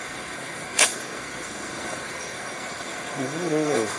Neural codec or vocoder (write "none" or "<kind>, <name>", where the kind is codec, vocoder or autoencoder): codec, SNAC